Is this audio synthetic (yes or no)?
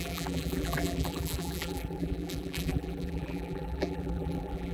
yes